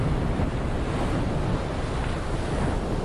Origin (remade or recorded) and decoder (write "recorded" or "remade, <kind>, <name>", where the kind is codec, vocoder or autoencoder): recorded